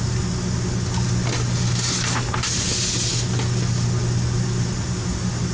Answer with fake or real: real